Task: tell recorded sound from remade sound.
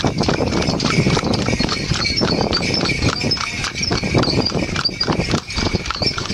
remade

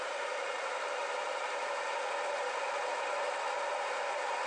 recorded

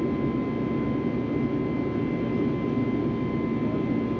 recorded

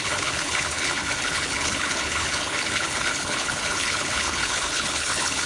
remade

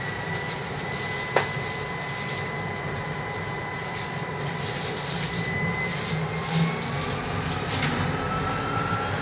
recorded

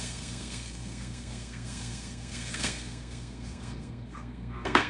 remade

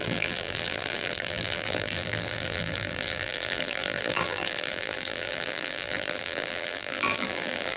remade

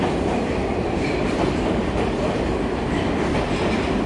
recorded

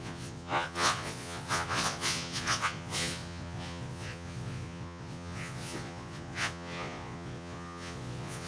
remade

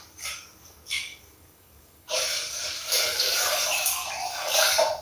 remade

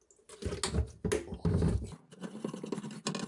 recorded